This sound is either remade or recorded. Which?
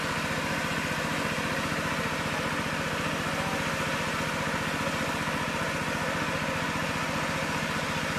recorded